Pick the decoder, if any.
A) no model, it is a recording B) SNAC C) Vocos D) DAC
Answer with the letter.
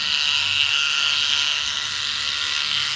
B